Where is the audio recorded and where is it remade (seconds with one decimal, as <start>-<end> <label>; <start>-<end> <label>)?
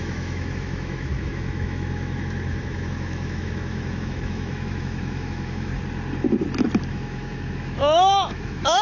0.0-5.7 remade; 5.7-6.9 recorded; 6.9-8.8 remade